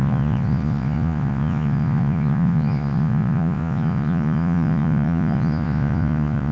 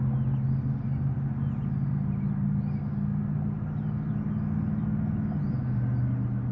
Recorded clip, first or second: second